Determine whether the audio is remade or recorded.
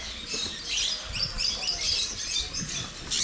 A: recorded